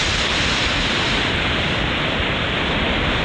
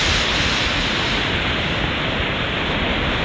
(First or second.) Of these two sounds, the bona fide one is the second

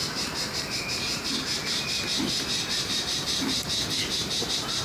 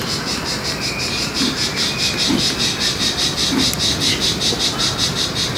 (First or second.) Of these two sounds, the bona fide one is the second